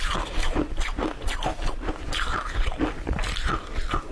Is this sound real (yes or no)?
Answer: yes